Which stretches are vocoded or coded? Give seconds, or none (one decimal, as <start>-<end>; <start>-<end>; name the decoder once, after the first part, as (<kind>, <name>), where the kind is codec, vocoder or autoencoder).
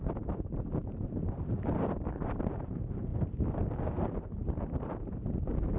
0.0-3.1 (vocoder, BigVGAN v2); 3.7-5.8